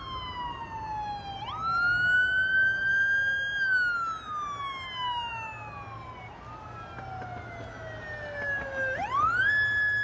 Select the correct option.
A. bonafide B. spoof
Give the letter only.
A